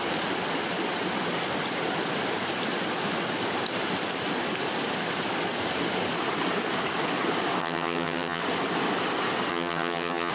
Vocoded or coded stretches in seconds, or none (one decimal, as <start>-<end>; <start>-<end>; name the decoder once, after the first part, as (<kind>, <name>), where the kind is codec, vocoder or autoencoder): 7.6-8.4 (vocoder, HiFi-GAN); 9.5-10.3